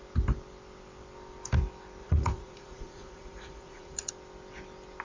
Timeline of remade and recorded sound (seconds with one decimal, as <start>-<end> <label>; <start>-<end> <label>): 0.0-2.0 recorded; 2.0-4.1 remade; 4.1-5.0 recorded